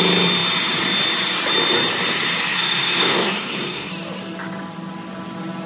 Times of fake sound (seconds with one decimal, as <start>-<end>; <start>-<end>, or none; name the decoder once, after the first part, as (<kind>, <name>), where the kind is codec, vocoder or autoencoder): 2.5-3.9 (codec, SNAC)